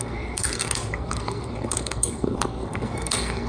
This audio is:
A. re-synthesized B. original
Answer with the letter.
A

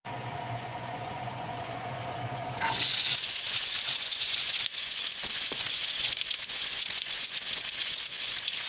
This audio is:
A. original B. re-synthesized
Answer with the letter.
B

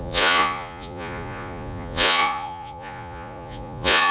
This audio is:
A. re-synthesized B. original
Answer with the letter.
A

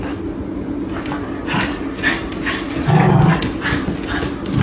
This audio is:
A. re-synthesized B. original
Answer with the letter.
B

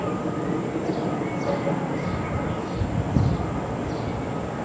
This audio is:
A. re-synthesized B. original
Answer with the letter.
B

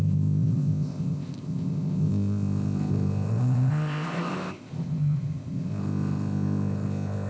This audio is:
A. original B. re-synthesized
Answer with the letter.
B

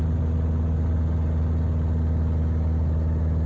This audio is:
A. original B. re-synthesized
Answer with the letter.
A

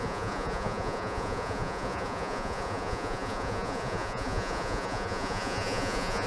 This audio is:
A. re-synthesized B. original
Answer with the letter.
A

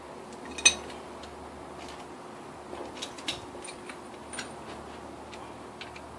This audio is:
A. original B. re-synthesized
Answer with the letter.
A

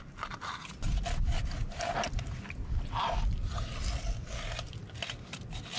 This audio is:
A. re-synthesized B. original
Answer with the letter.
B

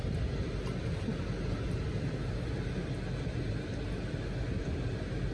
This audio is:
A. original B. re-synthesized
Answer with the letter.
A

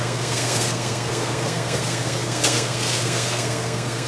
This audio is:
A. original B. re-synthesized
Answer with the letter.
B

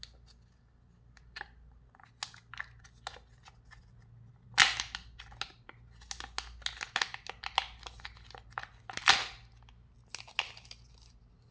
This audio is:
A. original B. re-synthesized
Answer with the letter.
A